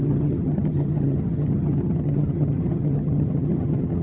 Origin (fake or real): fake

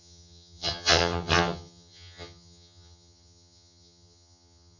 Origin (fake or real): fake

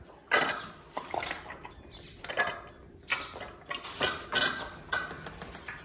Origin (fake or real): real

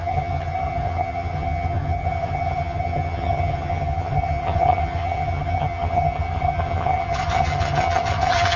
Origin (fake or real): fake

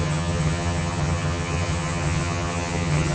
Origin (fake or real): fake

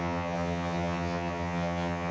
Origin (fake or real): fake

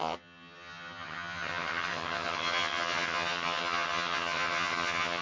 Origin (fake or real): fake